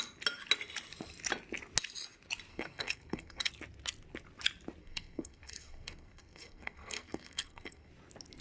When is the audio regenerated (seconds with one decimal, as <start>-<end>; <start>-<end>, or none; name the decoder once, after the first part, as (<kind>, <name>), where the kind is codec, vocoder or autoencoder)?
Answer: 2.5-3.5 (codec, SNAC); 4.8-7.9